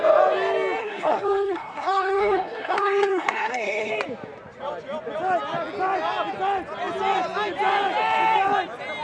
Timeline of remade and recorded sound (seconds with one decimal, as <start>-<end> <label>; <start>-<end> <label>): 0.0-0.8 recorded; 0.8-3.9 remade; 3.9-9.0 recorded